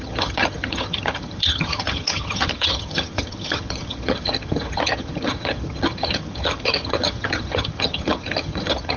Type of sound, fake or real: fake